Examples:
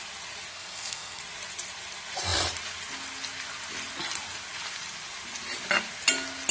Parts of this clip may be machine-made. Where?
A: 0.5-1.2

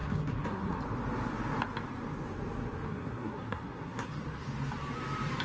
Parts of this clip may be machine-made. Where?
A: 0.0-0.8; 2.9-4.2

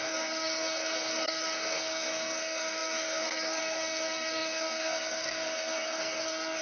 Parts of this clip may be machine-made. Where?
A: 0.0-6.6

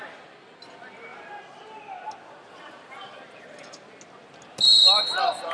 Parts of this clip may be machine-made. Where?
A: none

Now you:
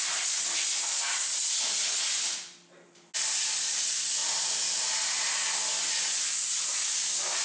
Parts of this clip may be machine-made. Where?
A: none